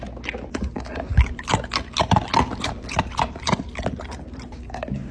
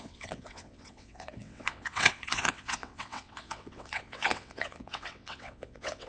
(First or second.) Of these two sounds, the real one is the first